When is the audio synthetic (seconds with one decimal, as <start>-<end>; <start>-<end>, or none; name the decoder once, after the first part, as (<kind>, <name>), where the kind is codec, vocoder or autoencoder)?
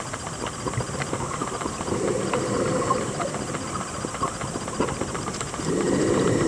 none